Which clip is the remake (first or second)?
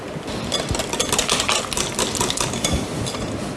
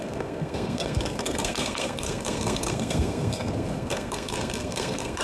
second